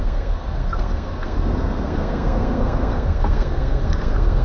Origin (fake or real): fake